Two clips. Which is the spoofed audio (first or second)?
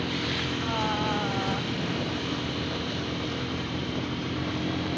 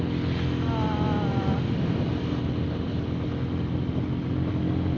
first